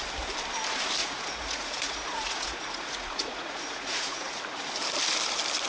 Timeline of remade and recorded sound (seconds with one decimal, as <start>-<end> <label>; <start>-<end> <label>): 0.0-1.0 recorded; 1.0-4.4 remade; 4.4-5.7 recorded